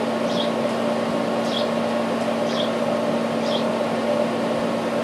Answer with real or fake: real